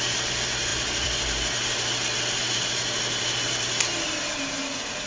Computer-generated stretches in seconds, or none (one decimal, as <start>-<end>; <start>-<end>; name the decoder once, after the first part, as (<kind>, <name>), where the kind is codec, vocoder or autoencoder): 0.7-3.8 (vocoder, BigVGAN v2)